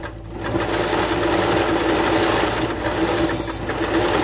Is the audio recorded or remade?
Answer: recorded